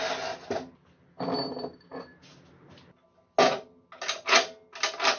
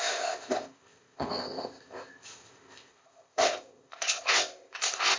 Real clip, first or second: first